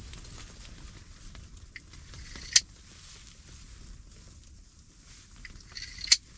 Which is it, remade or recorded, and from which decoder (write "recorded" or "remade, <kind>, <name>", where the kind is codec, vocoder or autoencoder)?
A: recorded